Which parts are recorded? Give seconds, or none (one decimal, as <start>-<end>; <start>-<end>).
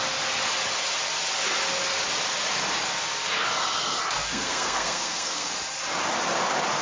0.0-4.3; 5.5-6.8